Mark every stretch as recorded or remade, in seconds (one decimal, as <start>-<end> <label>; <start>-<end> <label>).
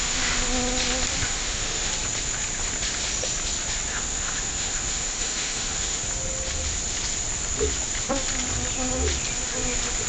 0.0-1.2 recorded; 1.2-1.9 remade; 1.9-3.9 recorded; 3.9-6.0 remade; 6.0-10.1 recorded